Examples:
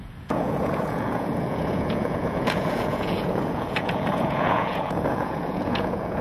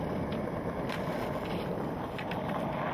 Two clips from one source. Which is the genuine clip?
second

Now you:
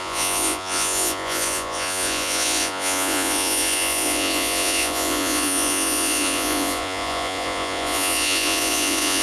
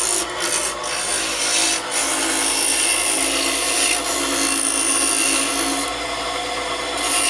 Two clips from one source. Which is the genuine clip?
second